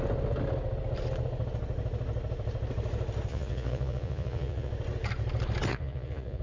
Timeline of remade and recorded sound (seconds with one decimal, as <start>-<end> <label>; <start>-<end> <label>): 0.0-3.3 recorded; 3.3-4.7 remade; 4.7-5.7 recorded; 5.7-6.4 remade